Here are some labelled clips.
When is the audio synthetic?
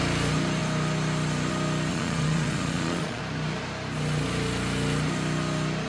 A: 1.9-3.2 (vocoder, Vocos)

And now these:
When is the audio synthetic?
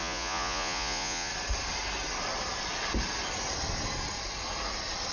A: 0.0-1.3 (vocoder, Vocos)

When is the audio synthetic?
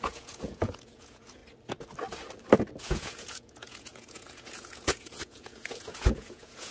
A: 0.0-1.4 (vocoder, Vocos); 2.8-6.7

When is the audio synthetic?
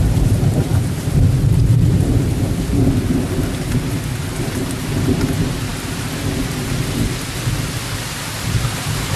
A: none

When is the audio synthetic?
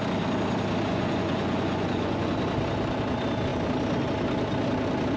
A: 0.9-2.3 (vocoder, Vocos)